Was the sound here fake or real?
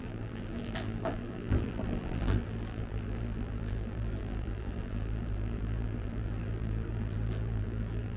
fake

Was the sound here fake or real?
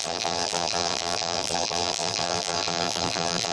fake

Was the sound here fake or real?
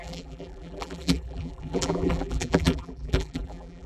fake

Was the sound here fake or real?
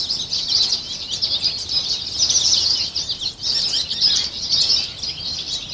real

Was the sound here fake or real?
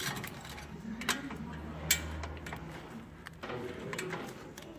real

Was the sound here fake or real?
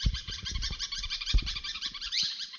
fake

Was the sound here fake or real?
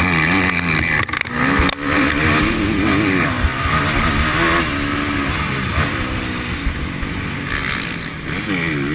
real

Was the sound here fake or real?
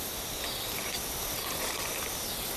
real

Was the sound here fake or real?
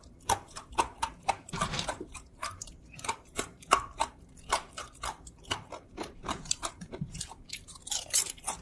fake